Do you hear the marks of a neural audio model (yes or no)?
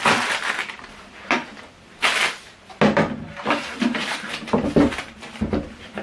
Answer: no